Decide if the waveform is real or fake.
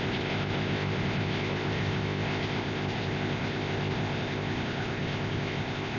fake